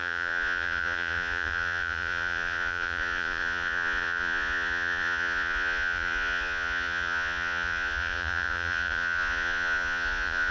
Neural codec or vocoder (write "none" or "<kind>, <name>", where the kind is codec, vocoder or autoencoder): vocoder, Vocos